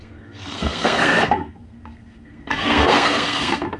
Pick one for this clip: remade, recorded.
remade